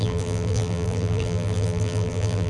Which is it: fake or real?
fake